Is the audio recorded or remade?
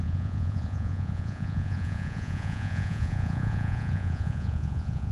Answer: remade